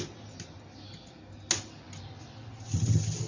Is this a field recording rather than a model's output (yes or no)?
yes